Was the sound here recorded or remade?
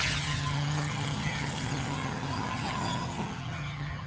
remade